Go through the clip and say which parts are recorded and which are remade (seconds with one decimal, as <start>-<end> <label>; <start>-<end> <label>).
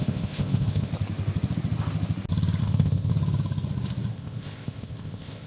0.0-0.9 remade; 0.9-2.6 recorded; 2.6-3.1 remade; 3.1-4.1 recorded; 4.1-5.5 remade